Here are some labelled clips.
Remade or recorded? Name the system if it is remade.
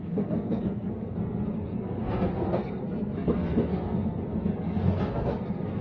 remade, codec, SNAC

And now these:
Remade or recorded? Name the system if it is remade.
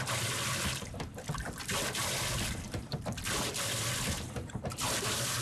remade, vocoder, BigVGAN v2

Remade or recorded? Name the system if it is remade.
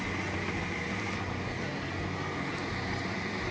recorded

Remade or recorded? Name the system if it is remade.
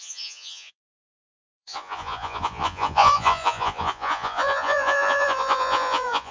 remade, vocoder, Vocos